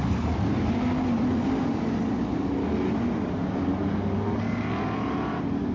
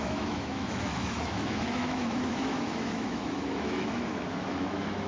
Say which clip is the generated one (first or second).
second